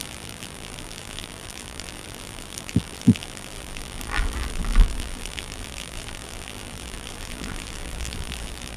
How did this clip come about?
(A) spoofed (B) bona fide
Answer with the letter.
A